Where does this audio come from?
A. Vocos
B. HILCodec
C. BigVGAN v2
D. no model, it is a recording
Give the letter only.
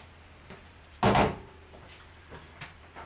D